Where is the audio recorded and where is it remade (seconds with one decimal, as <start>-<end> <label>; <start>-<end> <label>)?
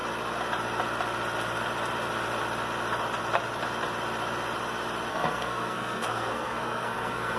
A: 0.0-5.1 recorded; 5.1-7.4 remade